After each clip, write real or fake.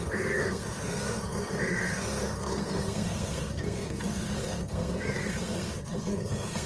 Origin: fake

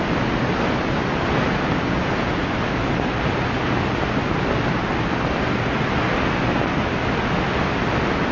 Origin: real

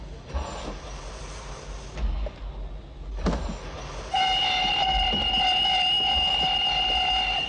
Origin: real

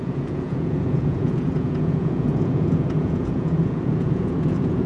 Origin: fake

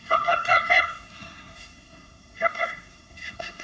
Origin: fake